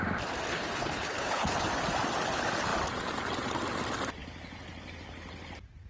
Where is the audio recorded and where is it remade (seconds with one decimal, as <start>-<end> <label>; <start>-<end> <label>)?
0.0-0.5 recorded; 0.5-1.7 remade; 1.7-5.9 recorded